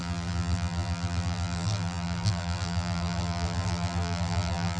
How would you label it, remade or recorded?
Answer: remade